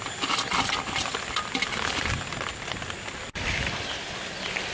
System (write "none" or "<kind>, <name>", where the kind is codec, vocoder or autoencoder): none